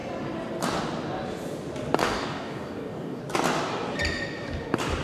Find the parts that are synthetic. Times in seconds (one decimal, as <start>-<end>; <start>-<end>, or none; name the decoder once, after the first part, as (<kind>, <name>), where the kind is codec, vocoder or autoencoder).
2.0-3.2 (codec, DAC)